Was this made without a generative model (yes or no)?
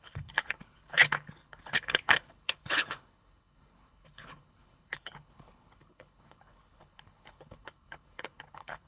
no